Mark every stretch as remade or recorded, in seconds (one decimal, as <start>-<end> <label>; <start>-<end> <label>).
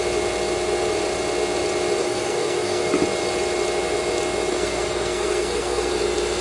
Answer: 0.0-2.0 recorded; 2.0-2.9 remade; 2.9-4.5 recorded; 4.5-5.9 remade; 5.9-6.4 recorded